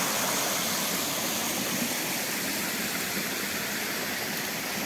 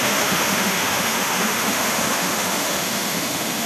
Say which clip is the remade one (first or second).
second